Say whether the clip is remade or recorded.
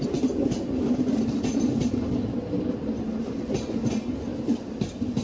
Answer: recorded